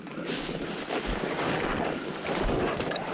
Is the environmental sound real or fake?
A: real